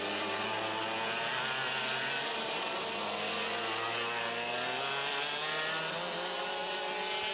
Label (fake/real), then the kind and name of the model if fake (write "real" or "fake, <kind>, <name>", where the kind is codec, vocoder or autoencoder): real